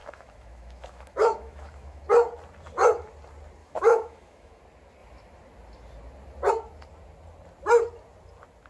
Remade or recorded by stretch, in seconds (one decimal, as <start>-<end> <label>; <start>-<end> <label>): 0.0-2.0 remade; 2.0-3.6 recorded; 3.6-4.6 remade; 4.6-8.7 recorded

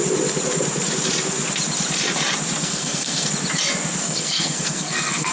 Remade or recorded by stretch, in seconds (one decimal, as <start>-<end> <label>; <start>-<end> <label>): 0.0-2.6 recorded; 2.6-3.3 remade; 3.3-4.0 recorded; 4.0-5.3 remade

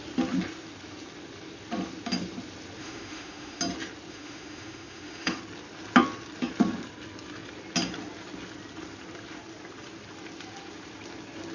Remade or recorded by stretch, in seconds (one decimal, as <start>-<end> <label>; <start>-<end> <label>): 0.0-2.8 recorded; 2.8-3.6 remade; 3.6-4.1 recorded; 4.1-5.4 remade; 5.4-11.5 recorded

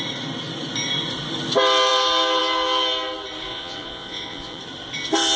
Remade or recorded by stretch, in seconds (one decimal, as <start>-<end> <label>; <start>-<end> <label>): 0.0-3.5 recorded; 3.5-4.6 remade; 4.6-5.4 recorded

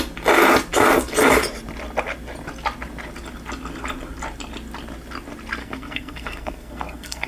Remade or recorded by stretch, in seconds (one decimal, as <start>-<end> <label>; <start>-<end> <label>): 0.0-5.6 recorded; 5.6-7.3 remade

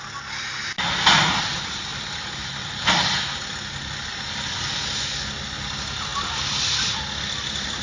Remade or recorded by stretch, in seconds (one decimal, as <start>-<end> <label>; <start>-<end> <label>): 0.0-1.9 recorded; 1.9-2.9 remade; 2.9-4.1 recorded; 4.1-5.4 remade; 5.4-7.8 recorded

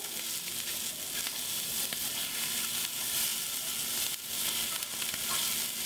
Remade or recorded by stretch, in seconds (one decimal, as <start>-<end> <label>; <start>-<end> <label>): 0.0-5.9 recorded